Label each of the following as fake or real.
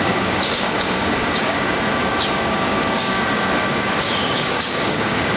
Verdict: fake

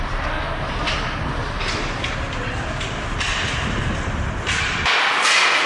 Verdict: real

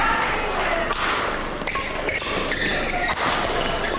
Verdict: real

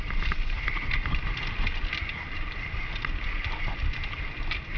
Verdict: real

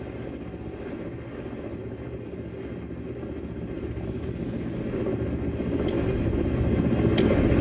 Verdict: real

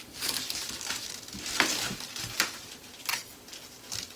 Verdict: fake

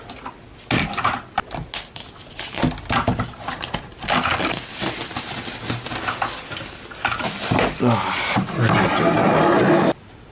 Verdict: real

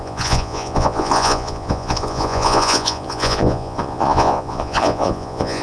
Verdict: fake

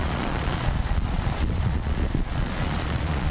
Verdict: fake